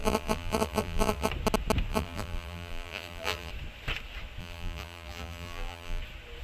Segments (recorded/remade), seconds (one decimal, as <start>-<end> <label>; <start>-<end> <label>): 0.0-1.3 remade; 1.3-1.9 recorded; 1.9-3.5 remade; 3.5-4.4 recorded; 4.4-6.0 remade; 6.0-6.4 recorded